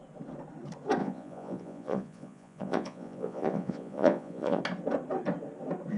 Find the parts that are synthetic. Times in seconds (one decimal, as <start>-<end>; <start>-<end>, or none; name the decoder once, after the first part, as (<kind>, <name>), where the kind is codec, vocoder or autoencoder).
1.0-4.6 (vocoder, Vocos)